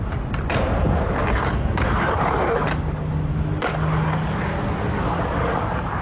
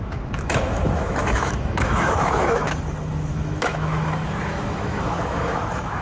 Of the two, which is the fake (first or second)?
second